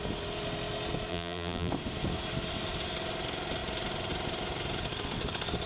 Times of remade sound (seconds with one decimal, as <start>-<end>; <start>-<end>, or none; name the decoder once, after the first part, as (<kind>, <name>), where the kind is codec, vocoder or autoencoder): 1.1-1.7 (vocoder, BigVGAN v2)